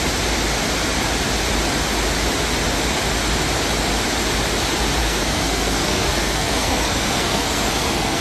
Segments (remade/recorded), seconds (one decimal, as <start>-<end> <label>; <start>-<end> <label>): 0.0-5.0 recorded; 5.0-8.2 remade